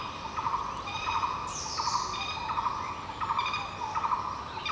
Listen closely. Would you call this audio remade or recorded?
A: recorded